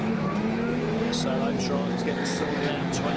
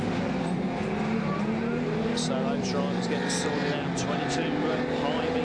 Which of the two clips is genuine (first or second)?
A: second